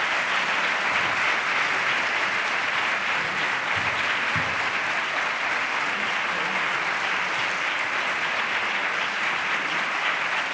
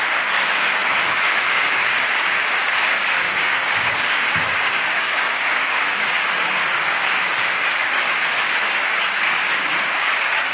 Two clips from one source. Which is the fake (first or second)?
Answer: second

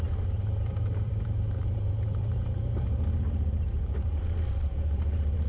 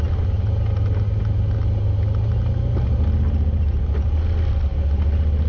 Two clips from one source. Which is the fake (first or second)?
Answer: first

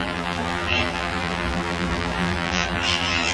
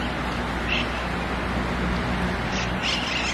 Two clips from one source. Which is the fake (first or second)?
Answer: first